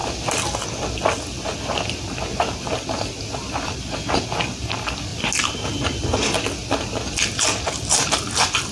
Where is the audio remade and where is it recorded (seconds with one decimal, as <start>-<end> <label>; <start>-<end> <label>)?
0.0-8.7 recorded